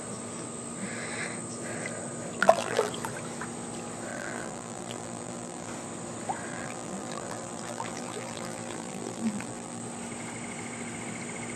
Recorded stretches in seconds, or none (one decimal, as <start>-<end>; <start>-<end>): 0.0-2.4; 2.9-4.1; 5.7-6.5; 9.8-11.6